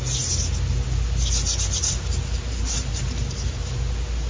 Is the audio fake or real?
real